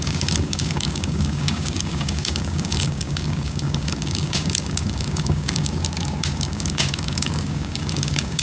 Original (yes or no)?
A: no